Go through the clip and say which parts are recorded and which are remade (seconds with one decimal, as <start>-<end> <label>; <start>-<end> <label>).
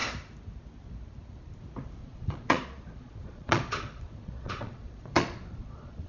0.0-2.0 recorded; 2.0-6.1 remade